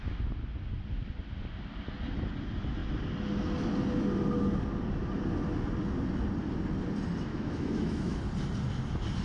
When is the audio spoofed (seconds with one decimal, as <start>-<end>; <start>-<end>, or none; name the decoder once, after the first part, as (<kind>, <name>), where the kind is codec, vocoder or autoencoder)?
7.3-8.2 (autoencoder, DAC-VAE)

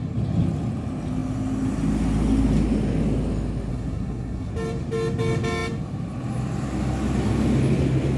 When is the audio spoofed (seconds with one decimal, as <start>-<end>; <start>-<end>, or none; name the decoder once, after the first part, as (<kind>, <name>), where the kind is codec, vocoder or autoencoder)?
3.7-4.5 (codec, SNAC)